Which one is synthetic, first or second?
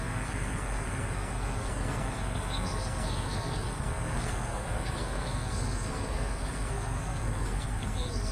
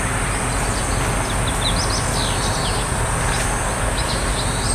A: first